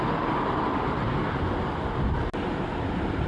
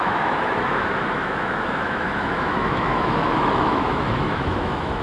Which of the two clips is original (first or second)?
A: first